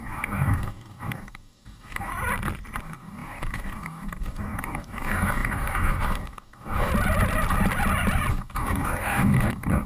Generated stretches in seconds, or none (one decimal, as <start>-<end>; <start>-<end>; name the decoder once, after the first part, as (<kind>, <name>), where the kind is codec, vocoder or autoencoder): 0.0-2.1 (codec, DAC); 2.8-6.9; 8.3-9.9

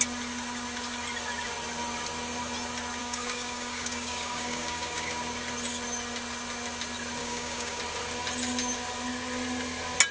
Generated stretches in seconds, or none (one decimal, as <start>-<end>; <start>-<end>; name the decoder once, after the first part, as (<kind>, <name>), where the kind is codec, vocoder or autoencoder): 3.0-5.1 (codec, DAC); 7.2-7.8

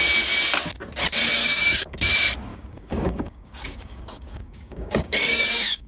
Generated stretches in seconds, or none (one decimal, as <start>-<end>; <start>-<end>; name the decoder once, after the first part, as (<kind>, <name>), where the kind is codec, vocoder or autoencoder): 1.4-2.1 (codec, DAC); 2.5-5.9

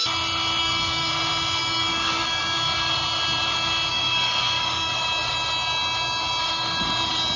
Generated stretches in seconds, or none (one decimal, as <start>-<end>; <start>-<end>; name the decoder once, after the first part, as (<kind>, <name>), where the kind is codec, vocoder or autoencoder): 0.6-1.1 (codec, DAC); 1.6-2.4; 3.9-4.9